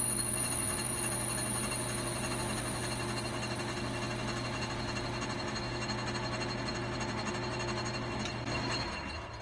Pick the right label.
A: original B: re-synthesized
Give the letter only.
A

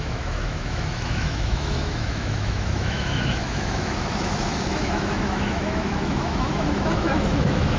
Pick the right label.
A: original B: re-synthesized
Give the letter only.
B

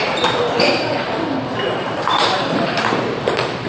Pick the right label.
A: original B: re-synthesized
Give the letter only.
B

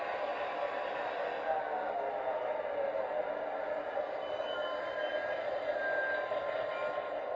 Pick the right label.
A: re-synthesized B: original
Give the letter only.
B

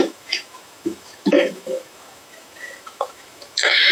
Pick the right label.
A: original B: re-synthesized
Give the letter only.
B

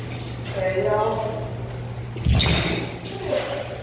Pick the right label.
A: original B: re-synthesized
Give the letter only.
A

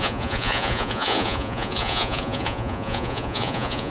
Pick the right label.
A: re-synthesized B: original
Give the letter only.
A